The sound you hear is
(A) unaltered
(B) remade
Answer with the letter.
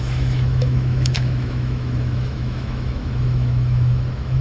B